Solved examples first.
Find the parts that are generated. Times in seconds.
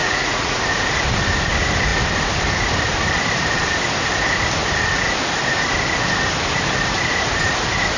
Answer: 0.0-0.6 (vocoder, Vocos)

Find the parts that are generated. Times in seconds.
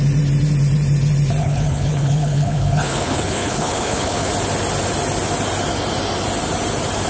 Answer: 1.4-4.3 (codec, HILCodec)